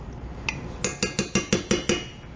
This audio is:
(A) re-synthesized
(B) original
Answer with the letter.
B